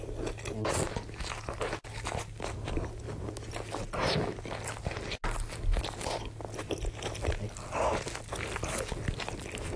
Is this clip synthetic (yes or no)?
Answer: no